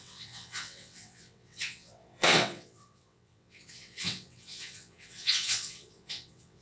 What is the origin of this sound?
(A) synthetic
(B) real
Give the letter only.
A